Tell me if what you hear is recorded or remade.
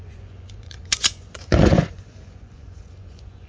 remade